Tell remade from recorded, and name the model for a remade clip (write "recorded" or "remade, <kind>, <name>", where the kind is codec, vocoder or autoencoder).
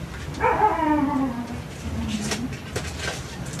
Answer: recorded